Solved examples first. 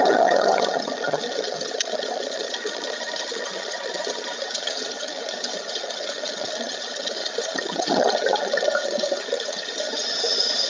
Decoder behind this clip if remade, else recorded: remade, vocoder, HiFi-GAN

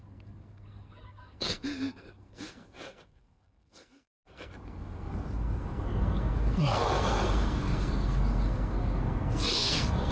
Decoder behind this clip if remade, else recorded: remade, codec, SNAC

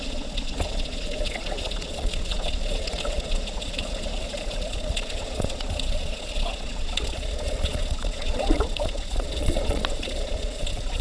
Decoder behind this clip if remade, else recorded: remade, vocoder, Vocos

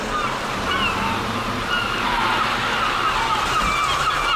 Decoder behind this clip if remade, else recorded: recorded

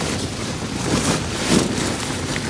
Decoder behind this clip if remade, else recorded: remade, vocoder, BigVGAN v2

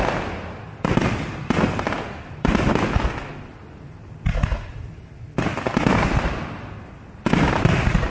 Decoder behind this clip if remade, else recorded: recorded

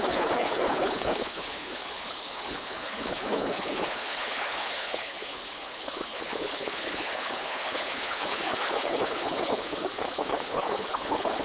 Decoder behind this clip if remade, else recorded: remade, codec, HILCodec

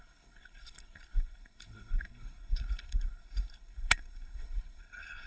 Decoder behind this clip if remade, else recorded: remade, codec, HILCodec